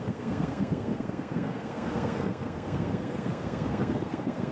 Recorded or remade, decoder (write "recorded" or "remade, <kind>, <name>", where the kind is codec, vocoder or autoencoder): remade, codec, SNAC